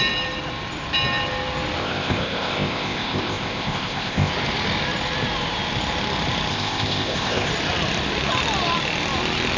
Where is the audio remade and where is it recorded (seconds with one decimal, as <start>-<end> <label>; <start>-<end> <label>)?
0.0-1.8 recorded; 1.8-4.3 remade; 4.3-6.5 recorded; 6.5-7.5 remade; 7.5-9.6 recorded